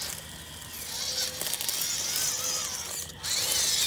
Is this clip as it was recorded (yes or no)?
yes